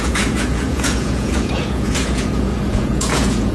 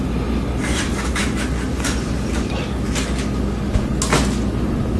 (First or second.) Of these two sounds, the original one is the second